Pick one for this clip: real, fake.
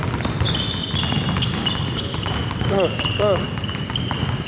real